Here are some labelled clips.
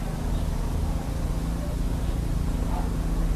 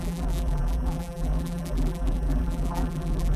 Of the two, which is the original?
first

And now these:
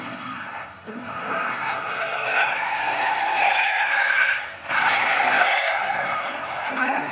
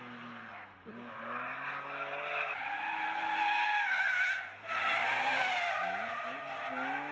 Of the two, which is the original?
second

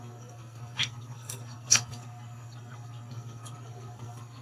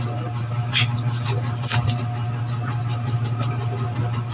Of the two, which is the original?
second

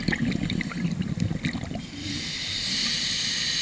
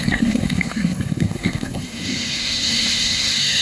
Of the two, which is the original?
first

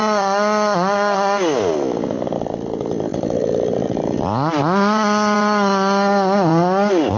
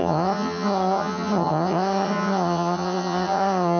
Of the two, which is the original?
first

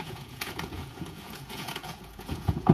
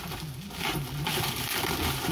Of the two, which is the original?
second